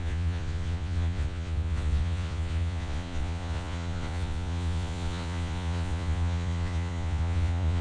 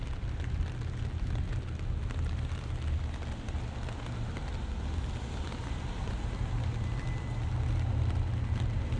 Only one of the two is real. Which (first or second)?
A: second